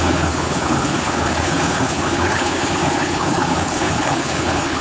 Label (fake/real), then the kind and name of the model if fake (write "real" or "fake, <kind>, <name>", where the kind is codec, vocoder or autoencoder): fake, codec, HILCodec